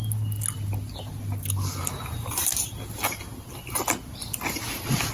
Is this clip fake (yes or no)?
no